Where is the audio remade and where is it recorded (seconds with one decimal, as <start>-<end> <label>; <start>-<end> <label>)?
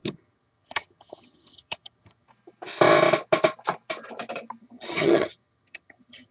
0.0-2.3 remade; 2.3-4.6 recorded; 4.6-6.3 remade